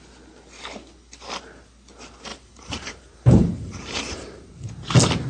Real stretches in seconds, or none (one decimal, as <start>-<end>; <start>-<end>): 0.0-2.3; 4.5-5.3